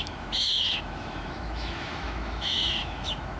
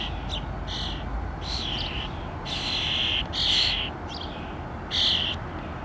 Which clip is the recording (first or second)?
second